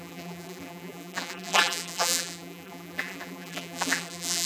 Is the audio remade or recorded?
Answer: remade